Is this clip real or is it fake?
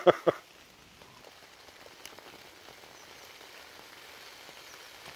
real